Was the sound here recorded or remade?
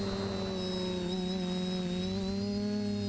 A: recorded